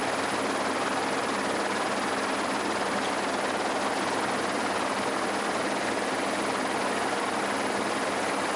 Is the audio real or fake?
real